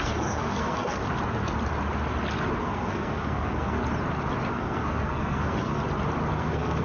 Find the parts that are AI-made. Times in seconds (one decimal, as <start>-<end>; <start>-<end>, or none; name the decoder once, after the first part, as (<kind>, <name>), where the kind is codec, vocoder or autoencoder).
0.0-1.0 (codec, SNAC); 2.6-3.8; 4.5-5.8; 6.3-6.8